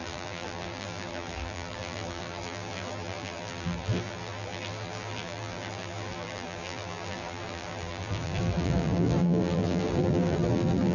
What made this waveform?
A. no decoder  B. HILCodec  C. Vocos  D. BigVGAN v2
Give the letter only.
D